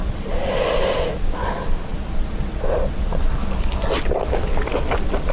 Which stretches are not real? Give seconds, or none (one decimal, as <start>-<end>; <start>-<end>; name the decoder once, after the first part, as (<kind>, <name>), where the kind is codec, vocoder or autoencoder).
none